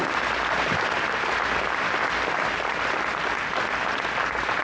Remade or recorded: recorded